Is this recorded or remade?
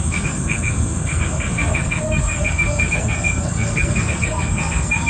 remade